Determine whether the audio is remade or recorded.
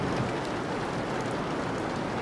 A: recorded